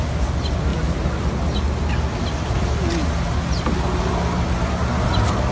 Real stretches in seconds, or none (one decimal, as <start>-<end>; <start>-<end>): 0.0-5.5